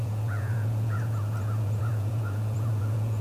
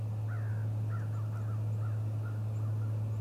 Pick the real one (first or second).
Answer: second